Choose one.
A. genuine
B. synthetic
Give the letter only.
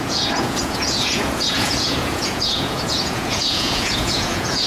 B